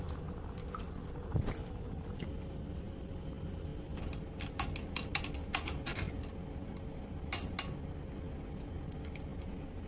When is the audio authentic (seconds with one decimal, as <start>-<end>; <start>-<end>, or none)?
0.0-9.9